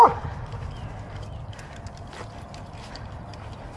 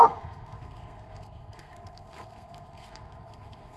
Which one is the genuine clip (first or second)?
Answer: first